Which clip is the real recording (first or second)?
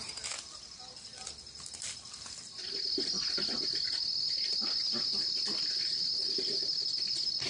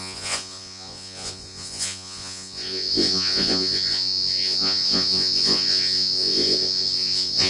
first